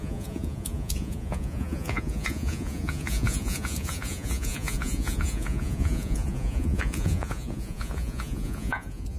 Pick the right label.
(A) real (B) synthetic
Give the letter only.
B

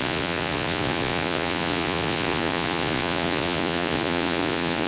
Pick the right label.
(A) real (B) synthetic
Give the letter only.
B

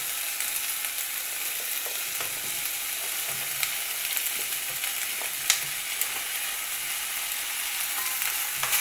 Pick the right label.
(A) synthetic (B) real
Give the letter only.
B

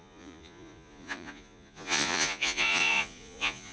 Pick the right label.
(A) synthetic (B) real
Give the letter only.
A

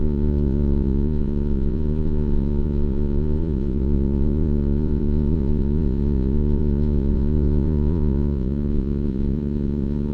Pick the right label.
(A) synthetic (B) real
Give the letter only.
A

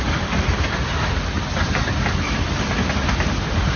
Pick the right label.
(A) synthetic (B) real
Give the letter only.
B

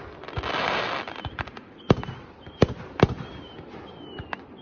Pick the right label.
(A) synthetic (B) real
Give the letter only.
B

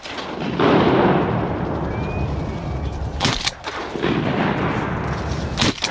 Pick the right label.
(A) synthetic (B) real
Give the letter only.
B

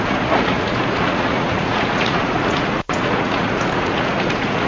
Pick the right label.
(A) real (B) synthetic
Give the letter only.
B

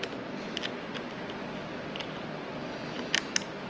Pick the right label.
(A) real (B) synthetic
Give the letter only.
A